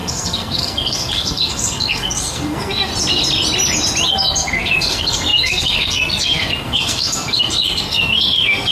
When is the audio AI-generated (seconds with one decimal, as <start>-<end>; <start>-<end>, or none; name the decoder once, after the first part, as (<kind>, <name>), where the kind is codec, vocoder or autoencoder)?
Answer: 0.0-2.9 (codec, SNAC); 4.1-8.7